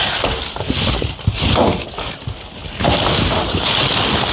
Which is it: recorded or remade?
recorded